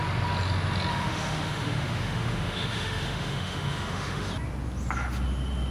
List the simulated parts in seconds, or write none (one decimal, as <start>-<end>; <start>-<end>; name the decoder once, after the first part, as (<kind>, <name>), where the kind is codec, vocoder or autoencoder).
0.9-4.3 (autoencoder, DAC-VAE)